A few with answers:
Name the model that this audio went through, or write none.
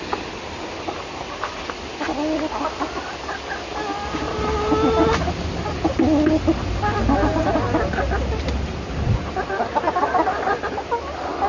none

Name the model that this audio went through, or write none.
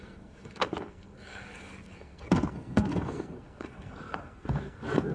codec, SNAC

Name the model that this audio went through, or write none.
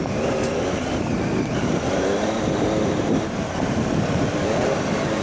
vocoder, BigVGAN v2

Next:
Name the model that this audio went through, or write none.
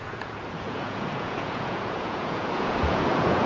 vocoder, Vocos